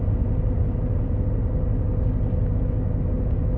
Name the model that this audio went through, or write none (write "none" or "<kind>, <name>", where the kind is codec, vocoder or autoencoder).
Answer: none